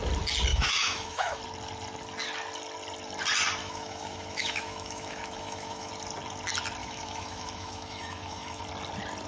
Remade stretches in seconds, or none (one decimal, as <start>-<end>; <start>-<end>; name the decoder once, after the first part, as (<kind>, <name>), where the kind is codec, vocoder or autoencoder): 0.5-1.4 (autoencoder, DAC-VAE); 3.6-5.9; 6.8-8.6